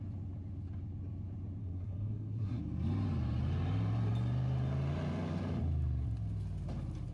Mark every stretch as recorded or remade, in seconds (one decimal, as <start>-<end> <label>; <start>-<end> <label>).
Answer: 0.0-1.6 recorded; 1.6-2.6 remade; 2.6-7.1 recorded